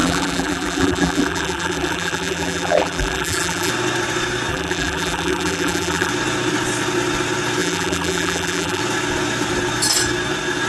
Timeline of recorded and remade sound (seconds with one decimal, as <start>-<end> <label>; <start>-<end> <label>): 0.0-3.7 remade; 3.7-4.5 recorded; 4.5-6.1 remade; 6.1-7.6 recorded; 7.6-8.8 remade; 8.8-10.7 recorded